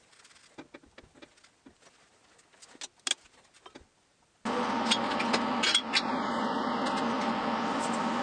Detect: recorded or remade recorded